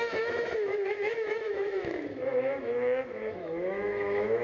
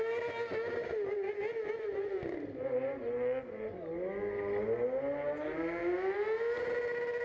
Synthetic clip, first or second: first